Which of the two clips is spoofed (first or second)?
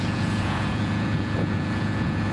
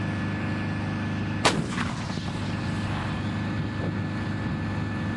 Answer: first